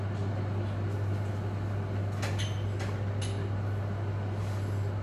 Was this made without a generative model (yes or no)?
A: yes